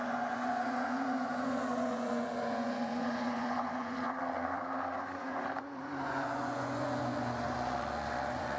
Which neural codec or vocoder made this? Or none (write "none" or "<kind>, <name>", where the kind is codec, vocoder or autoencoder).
vocoder, Vocos